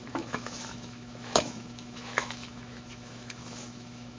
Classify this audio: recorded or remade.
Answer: remade